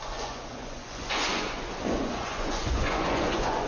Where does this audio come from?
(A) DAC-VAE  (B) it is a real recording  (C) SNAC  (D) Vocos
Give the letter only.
D